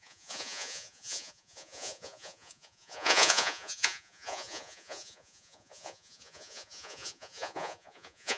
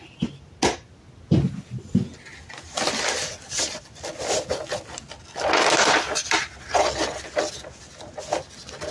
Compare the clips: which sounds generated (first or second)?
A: first